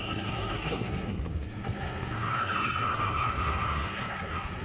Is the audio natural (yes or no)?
no